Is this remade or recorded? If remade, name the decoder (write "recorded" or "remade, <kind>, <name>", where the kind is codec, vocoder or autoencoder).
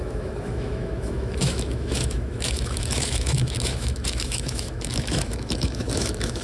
remade, autoencoder, DAC-VAE